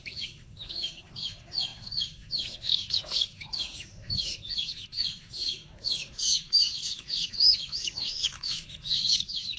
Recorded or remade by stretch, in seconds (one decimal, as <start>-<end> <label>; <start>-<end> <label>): 0.0-9.6 remade